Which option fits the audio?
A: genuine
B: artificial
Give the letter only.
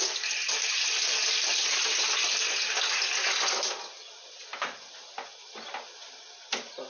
A